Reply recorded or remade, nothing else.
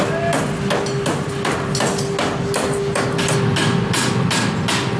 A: recorded